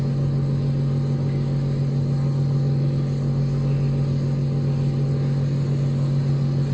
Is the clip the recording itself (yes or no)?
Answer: yes